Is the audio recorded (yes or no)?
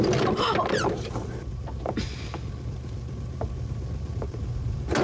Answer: yes